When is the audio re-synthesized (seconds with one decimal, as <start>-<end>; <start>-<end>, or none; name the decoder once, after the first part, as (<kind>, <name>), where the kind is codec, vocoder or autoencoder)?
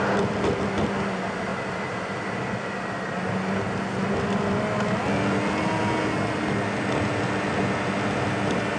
none